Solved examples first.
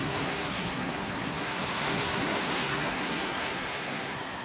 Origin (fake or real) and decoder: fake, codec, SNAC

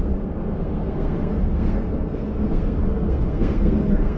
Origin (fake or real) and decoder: fake, codec, SNAC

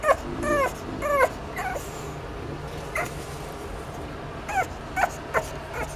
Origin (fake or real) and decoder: real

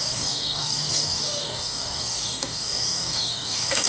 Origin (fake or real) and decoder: fake, codec, DAC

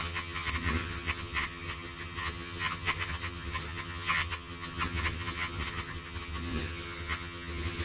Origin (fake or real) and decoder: fake, vocoder, HiFi-GAN